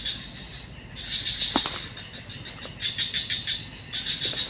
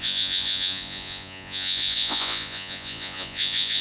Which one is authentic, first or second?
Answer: first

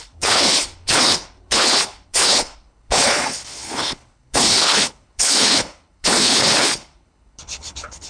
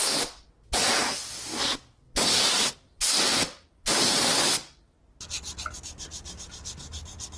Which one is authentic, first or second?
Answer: second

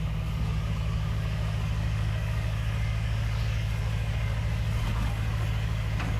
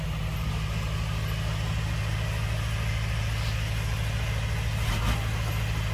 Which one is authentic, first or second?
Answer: second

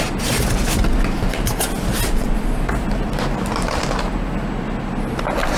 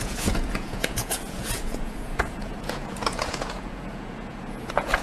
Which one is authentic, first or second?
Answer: first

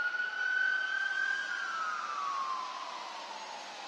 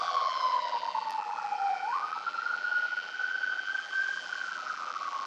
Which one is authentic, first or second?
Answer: first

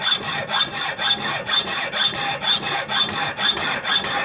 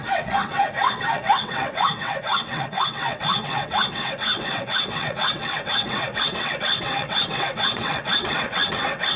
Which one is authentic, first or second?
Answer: first